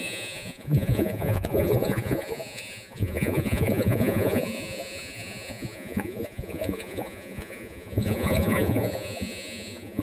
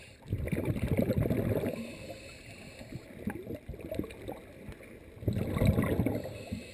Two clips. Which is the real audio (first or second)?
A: second